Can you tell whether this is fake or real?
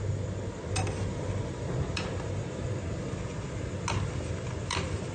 real